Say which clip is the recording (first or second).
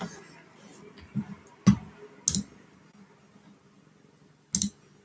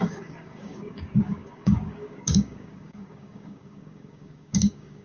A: first